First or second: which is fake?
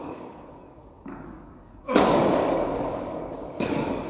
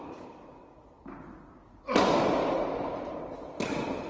first